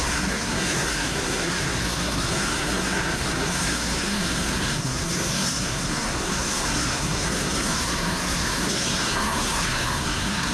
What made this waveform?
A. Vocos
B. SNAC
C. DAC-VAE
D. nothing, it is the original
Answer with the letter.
B